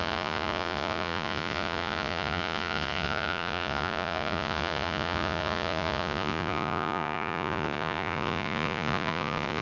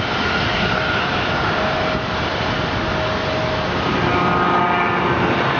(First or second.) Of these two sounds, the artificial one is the first